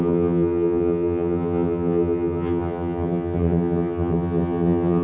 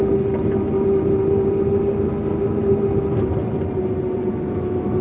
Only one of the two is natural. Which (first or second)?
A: second